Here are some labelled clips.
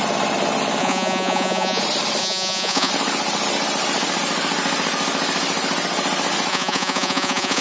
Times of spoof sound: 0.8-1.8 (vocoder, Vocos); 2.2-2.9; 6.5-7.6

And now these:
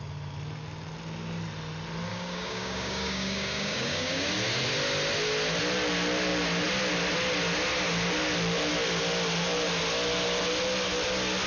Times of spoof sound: 2.1-4.3 (codec, DAC)

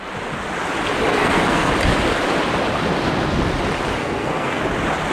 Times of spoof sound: 1.1-1.7 (codec, SNAC); 4.0-4.6